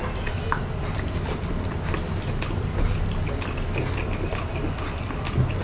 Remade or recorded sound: recorded